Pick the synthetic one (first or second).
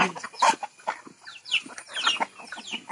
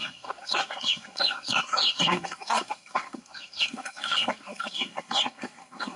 second